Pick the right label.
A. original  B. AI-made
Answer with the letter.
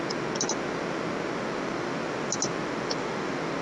A